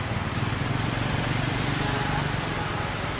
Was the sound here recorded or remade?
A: recorded